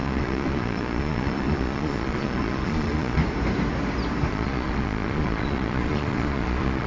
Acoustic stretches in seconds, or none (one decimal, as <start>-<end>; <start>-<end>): 3.2-4.3